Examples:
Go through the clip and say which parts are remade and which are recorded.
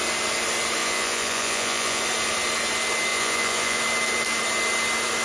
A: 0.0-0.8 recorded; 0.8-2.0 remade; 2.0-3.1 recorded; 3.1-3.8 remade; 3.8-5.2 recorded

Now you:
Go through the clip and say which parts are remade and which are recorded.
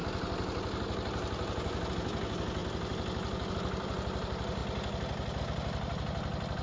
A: 0.0-1.9 recorded; 1.9-2.6 remade; 2.6-3.5 recorded; 3.5-4.6 remade; 4.6-5.4 recorded; 5.4-6.6 remade